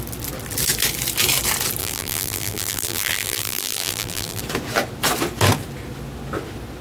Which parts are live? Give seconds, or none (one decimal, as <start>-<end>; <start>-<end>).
0.0-1.8; 4.4-6.8